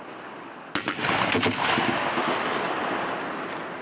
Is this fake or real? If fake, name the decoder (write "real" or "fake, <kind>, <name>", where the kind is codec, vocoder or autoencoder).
real